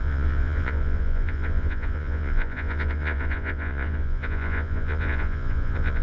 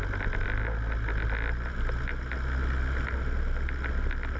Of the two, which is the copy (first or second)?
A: first